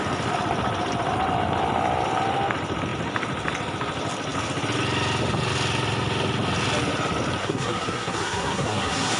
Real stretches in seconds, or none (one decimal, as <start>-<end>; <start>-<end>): 0.0-7.4